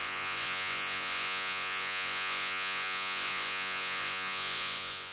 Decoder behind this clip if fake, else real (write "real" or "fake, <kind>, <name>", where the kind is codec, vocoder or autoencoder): fake, vocoder, Vocos